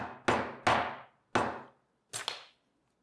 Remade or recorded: recorded